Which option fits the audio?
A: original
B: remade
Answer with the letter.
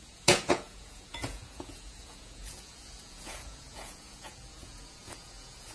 B